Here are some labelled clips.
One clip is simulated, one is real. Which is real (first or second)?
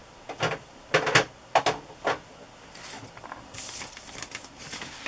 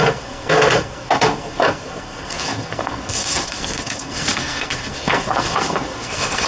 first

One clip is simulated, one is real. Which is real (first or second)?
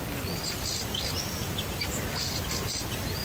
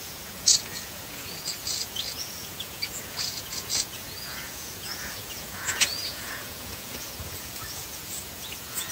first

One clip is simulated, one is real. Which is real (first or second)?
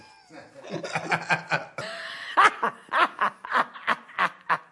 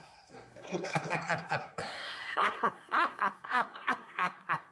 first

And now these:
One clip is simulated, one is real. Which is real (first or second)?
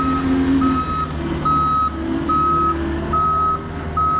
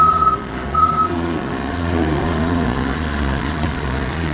first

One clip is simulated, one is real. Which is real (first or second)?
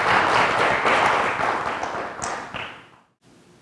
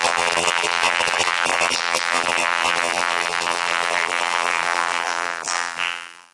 first